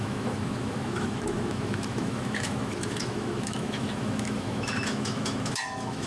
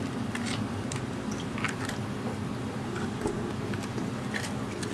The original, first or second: second